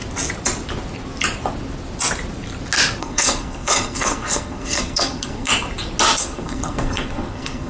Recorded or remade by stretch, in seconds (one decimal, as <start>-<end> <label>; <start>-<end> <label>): 0.0-3.0 recorded; 3.0-5.5 remade; 5.5-6.2 recorded; 6.2-7.7 remade